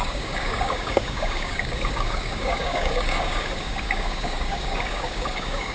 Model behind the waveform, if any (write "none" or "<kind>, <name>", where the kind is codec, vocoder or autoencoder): codec, DAC